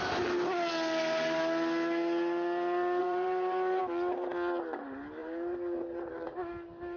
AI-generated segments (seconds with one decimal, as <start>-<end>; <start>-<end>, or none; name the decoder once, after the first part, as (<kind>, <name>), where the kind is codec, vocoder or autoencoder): 3.0-3.8 (vocoder, BigVGAN v2); 5.2-6.5